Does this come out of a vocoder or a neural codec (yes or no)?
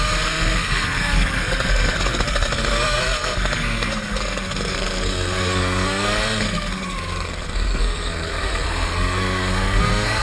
yes